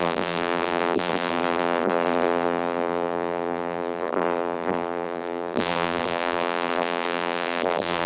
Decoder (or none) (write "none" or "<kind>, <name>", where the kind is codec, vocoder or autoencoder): vocoder, BigVGAN v2